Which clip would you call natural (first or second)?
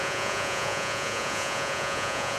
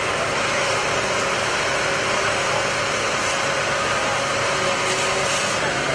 second